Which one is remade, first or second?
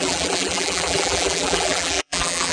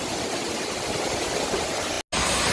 first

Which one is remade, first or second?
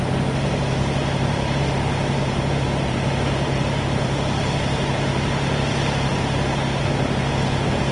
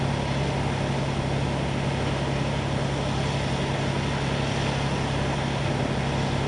first